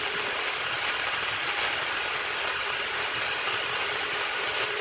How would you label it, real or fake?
real